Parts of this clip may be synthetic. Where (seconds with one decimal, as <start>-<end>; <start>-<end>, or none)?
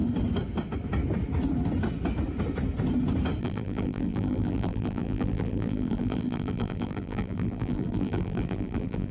3.4-9.1